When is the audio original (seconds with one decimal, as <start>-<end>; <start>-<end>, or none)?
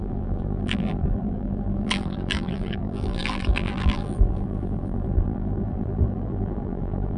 none